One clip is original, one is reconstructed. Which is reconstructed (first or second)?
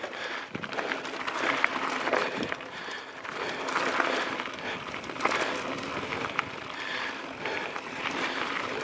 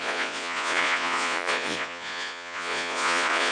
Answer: second